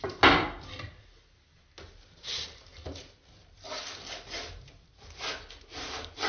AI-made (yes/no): no